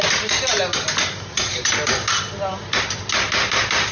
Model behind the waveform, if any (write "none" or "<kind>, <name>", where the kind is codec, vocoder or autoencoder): none